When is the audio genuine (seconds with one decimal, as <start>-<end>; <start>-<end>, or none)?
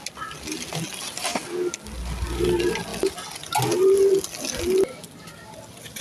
0.0-1.3; 2.0-6.0